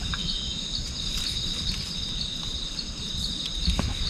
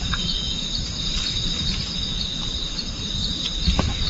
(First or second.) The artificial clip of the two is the second